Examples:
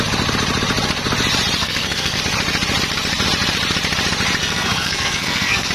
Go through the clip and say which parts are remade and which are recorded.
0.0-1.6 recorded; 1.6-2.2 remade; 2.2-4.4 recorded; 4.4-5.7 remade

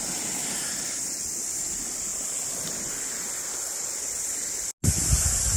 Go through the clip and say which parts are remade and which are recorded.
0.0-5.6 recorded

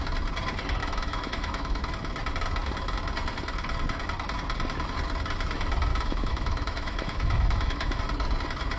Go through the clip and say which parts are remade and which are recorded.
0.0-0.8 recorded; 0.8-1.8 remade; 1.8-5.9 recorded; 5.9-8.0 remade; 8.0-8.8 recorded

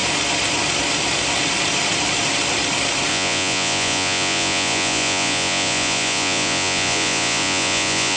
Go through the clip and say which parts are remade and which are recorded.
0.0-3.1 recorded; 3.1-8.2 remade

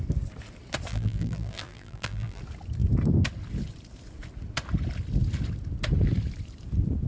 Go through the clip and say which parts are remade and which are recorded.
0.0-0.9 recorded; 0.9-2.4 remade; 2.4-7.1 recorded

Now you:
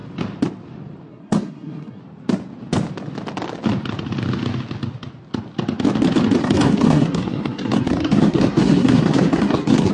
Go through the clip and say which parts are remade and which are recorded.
0.0-1.1 recorded; 1.1-2.0 remade; 2.0-6.4 recorded; 6.4-9.9 remade